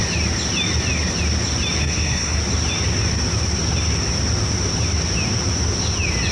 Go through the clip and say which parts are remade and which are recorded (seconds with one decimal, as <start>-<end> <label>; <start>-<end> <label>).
0.0-1.8 recorded; 1.8-2.4 remade; 2.4-6.3 recorded